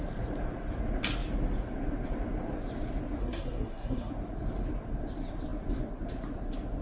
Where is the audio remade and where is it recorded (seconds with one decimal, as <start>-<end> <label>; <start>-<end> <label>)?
0.0-3.2 recorded; 3.2-4.1 remade; 4.1-6.8 recorded